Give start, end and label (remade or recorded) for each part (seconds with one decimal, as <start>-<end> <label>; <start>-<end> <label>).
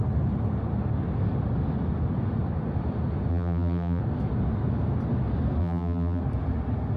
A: 0.0-3.3 recorded; 3.3-4.0 remade; 4.0-5.6 recorded; 5.6-6.2 remade; 6.2-7.0 recorded